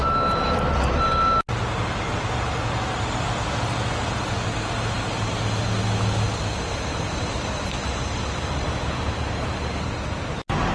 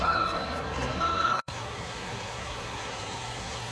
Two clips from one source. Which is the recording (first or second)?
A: first